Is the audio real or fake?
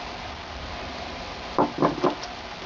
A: real